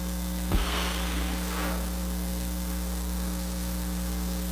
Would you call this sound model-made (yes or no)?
yes